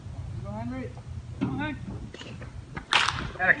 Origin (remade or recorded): recorded